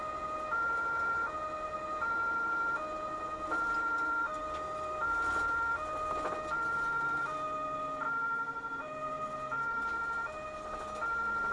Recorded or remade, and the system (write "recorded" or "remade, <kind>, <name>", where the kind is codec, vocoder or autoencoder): recorded